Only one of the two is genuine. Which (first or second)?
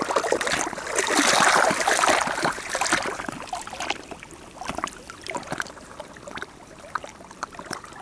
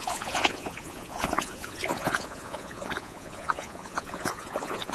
first